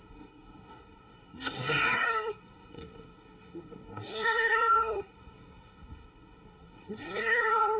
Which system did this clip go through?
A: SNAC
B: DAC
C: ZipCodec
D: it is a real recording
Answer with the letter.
A